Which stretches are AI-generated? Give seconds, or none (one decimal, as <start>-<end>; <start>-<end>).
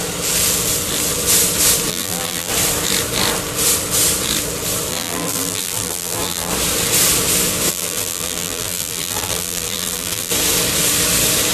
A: 1.9-2.5; 4.9-6.5; 7.7-10.3